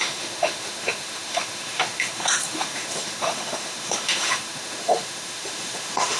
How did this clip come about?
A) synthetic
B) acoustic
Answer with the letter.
A